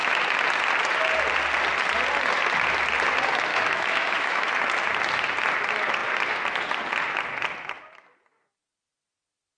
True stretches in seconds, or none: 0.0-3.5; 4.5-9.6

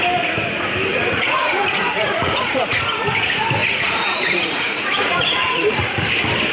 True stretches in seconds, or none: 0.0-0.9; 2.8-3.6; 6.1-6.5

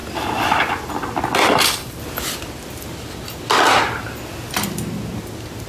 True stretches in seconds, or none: 0.0-5.7

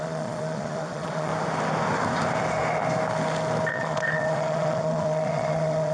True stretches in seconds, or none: 1.3-3.7